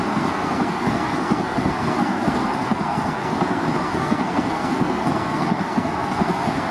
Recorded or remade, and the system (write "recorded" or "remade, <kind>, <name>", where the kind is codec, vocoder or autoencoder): remade, codec, SNAC